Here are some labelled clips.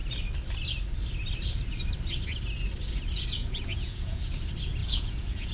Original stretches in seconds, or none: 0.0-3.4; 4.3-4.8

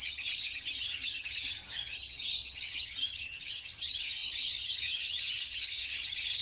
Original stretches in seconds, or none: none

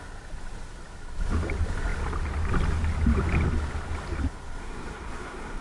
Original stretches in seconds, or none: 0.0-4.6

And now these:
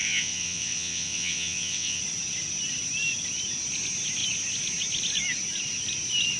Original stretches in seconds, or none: 2.0-6.4

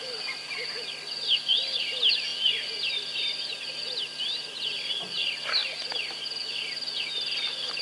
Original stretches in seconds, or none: 0.0-7.8

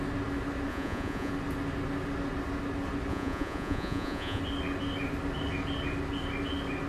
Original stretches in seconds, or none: 0.0-0.7; 1.3-3.1; 4.4-6.9

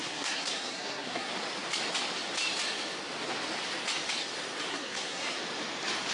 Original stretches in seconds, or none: 1.3-4.7; 5.4-6.1

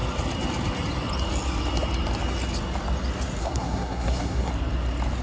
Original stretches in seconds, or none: 0.0-3.4; 4.5-5.2